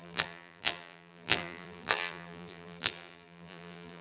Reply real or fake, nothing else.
fake